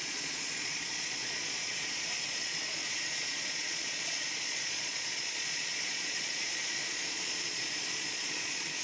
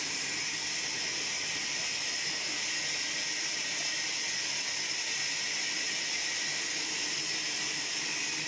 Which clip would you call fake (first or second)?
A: first